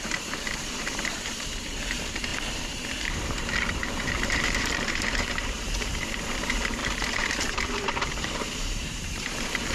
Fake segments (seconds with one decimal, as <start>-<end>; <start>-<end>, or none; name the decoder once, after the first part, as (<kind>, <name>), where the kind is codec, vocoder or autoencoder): 0.0-2.3 (vocoder, BigVGAN v2); 3.1-9.7